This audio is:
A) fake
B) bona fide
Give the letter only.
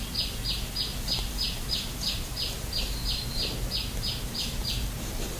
B